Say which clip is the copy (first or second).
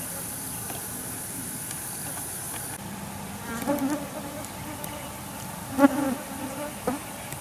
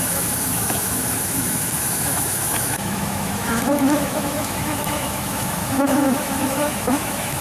second